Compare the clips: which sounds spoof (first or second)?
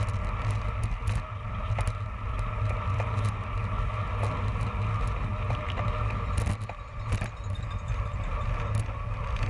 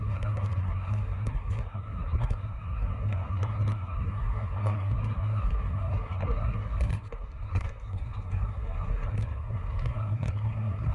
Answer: second